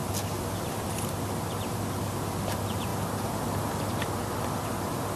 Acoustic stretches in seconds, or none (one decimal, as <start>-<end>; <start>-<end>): 0.0-5.2